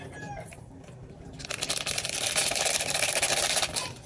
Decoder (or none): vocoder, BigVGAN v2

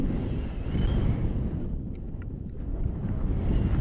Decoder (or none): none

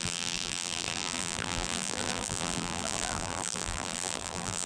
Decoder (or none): vocoder, BigVGAN v2